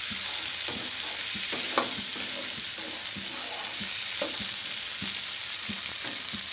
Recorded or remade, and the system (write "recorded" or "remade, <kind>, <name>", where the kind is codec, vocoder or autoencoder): recorded